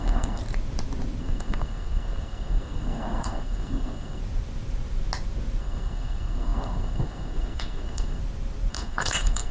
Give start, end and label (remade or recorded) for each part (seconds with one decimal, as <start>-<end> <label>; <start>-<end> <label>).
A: 0.0-0.4 remade; 0.4-1.2 recorded; 1.2-4.2 remade; 4.2-5.6 recorded; 5.6-8.2 remade; 8.2-8.7 recorded; 8.7-9.5 remade